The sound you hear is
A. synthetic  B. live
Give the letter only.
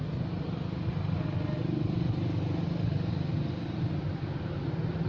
B